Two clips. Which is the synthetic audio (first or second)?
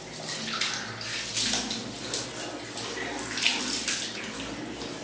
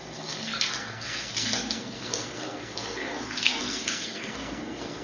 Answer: second